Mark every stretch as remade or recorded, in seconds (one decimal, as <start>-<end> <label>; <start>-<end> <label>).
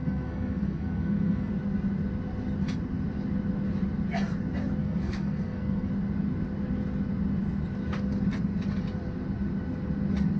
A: 0.0-1.5 remade; 1.5-4.8 recorded; 4.8-5.9 remade; 5.9-10.4 recorded